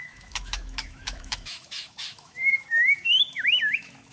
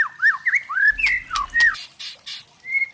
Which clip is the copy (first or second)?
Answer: first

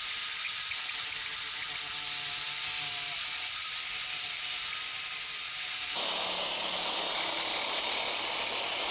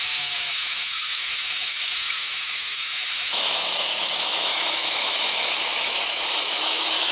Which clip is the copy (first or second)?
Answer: second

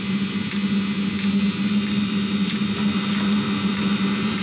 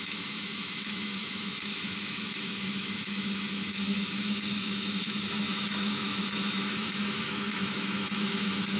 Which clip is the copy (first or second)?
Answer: second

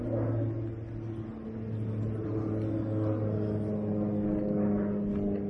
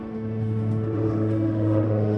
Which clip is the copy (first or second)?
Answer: second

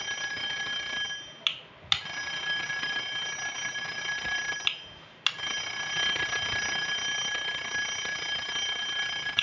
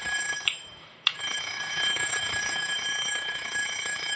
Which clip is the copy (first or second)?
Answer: second